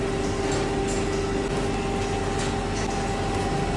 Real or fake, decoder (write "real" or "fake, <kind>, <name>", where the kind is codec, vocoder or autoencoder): real